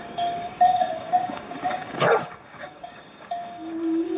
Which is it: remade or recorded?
remade